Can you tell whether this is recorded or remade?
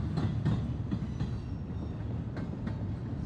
recorded